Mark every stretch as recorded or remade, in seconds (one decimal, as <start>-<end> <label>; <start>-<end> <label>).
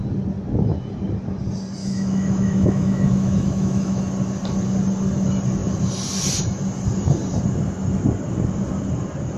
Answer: 0.0-1.8 recorded; 1.8-4.0 remade; 4.0-9.4 recorded